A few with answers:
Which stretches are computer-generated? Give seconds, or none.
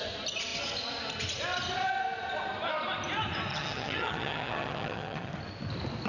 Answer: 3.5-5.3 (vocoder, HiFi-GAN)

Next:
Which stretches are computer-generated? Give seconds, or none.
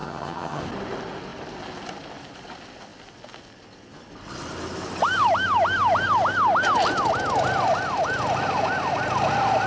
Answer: 0.0-0.6 (vocoder, HiFi-GAN)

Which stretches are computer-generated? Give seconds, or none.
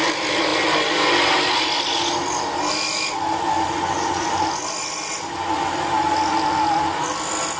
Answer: none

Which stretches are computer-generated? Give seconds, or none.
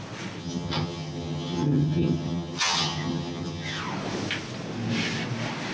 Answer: 0.4-3.8 (vocoder, HiFi-GAN)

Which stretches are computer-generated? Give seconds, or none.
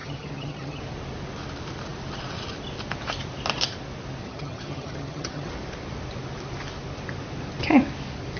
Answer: 0.0-0.8 (vocoder, HiFi-GAN); 4.2-5.5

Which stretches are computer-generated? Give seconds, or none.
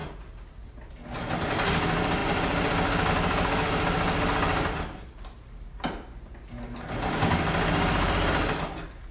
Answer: none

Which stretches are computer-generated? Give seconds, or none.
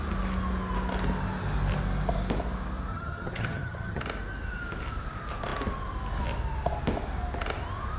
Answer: 2.9-4.0 (vocoder, HiFi-GAN)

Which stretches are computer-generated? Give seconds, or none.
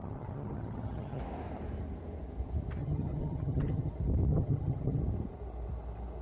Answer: 0.0-1.2 (vocoder, HiFi-GAN); 2.8-3.9; 4.3-5.0